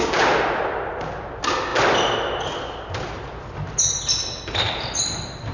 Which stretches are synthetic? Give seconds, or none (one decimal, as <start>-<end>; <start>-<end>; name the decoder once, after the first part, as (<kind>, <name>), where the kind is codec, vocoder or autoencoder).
none